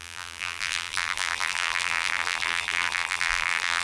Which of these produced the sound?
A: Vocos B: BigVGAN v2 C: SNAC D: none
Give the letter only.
B